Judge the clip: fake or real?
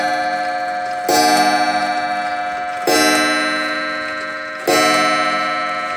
real